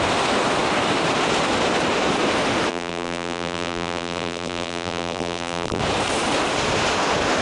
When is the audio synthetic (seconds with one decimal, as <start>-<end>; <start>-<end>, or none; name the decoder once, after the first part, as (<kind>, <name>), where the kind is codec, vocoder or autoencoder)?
2.7-5.8 (vocoder, BigVGAN v2)